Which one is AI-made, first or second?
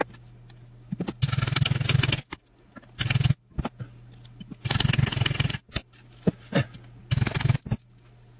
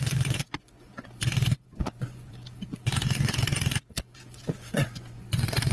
second